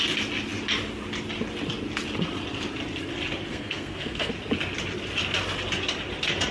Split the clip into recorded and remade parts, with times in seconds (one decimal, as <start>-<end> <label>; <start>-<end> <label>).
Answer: 0.0-3.5 recorded; 3.5-4.3 remade; 4.3-6.5 recorded